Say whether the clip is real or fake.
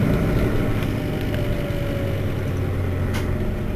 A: real